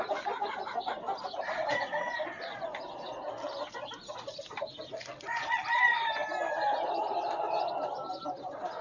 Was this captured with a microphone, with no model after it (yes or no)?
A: yes